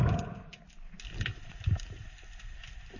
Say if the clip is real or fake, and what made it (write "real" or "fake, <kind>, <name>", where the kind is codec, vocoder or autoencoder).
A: real